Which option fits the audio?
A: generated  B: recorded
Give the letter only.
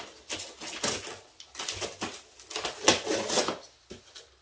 B